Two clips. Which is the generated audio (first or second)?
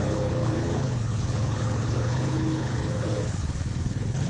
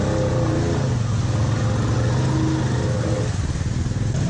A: first